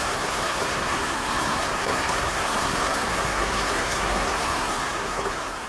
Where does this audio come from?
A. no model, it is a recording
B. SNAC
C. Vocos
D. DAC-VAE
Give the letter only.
B